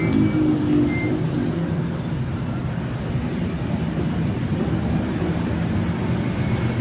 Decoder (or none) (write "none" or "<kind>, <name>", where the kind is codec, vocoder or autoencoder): none